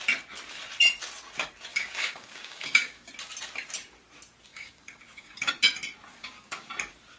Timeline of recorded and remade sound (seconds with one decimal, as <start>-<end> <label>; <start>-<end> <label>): 0.0-1.7 recorded; 1.7-3.1 remade; 3.1-4.5 recorded; 4.5-5.5 remade; 5.5-6.1 recorded; 6.1-6.7 remade; 6.7-7.2 recorded